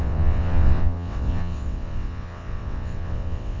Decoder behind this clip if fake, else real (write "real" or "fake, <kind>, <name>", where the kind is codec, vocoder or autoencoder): fake, vocoder, WaveNeXt